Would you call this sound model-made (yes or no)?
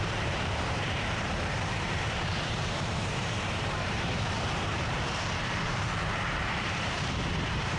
yes